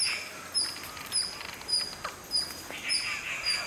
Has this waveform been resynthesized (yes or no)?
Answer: no